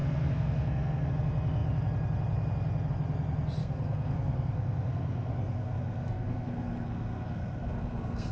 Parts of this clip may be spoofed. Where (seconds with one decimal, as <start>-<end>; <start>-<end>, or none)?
0.0-1.1; 3.6-8.3